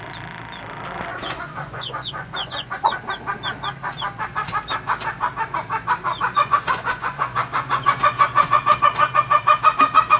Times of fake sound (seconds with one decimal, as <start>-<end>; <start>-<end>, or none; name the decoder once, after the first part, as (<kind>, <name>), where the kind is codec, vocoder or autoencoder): 1.1-3.0 (vocoder, Vocos); 6.1-9.1